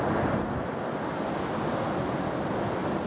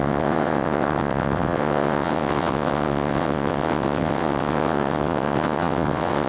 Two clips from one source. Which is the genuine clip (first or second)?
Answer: first